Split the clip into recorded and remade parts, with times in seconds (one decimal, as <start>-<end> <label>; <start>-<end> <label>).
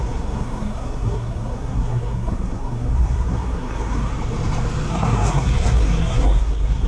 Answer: 0.0-4.1 remade; 4.1-4.9 recorded; 4.9-6.9 remade